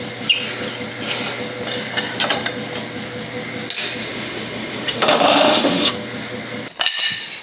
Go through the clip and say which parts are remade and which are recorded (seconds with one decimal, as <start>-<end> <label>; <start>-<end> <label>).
0.0-4.0 recorded; 4.0-5.9 remade; 5.9-7.4 recorded